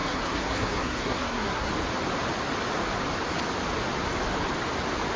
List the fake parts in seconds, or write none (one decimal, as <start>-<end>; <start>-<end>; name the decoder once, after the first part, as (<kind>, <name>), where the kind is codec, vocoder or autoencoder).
0.0-1.7 (codec, SNAC)